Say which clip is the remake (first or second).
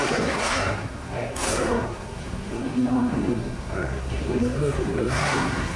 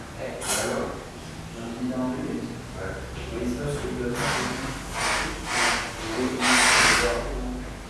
first